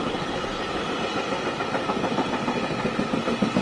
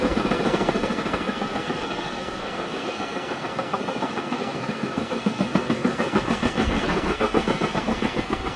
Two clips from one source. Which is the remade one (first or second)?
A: second